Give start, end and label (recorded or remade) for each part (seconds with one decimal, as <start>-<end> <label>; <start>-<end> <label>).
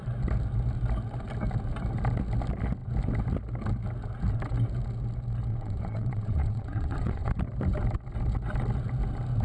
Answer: 0.0-5.5 recorded; 5.5-7.3 remade; 7.3-9.4 recorded